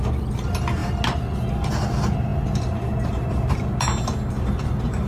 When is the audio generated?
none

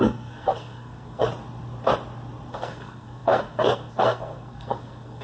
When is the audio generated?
0.0-1.3 (codec, SNAC); 2.5-5.2